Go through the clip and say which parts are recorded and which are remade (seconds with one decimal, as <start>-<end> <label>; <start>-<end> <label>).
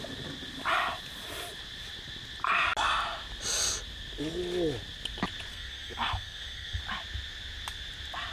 0.0-5.5 recorded; 5.5-6.8 remade; 6.8-8.3 recorded